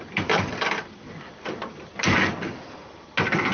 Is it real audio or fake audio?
real